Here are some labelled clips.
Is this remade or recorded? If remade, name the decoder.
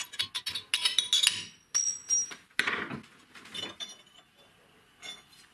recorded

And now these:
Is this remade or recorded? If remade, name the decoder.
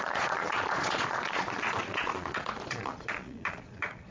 remade, vocoder, Vocos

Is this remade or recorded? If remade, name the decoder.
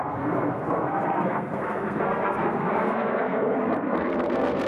remade, codec, SNAC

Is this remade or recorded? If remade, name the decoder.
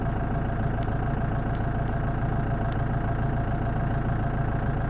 recorded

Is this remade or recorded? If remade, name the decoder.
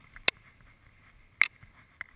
recorded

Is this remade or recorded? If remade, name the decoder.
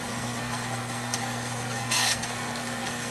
remade, codec, SNAC